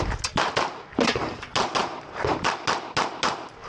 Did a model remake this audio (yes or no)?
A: no